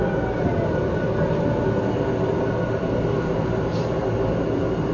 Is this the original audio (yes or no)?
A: yes